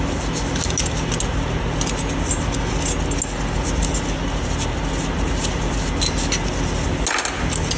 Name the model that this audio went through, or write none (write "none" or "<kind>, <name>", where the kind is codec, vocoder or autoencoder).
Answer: none